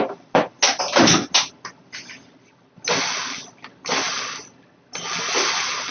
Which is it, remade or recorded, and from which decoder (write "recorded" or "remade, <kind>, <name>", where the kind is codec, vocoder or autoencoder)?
recorded